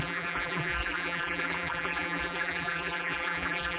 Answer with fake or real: fake